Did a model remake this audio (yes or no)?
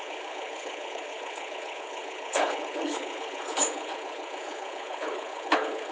yes